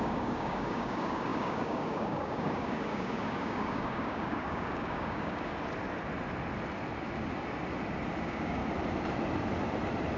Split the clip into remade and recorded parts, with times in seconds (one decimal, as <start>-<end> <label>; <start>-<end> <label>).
0.0-5.5 remade; 5.5-8.2 recorded; 8.2-8.6 remade; 8.6-10.2 recorded